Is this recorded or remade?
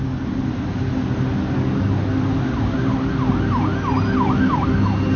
recorded